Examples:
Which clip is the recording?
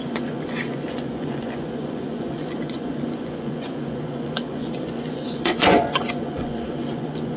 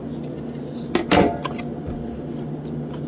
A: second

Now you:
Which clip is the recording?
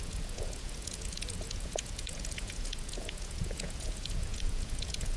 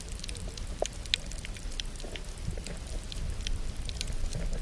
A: second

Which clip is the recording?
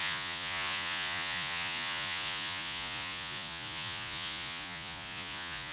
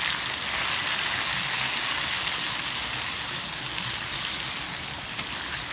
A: second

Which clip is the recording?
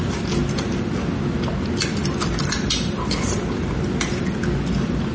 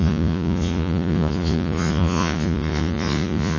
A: first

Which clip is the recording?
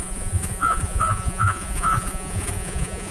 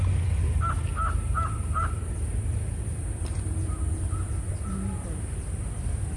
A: second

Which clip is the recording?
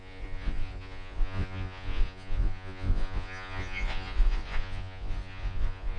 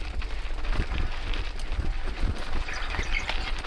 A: second